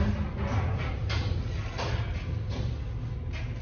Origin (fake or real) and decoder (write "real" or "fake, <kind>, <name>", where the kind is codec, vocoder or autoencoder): real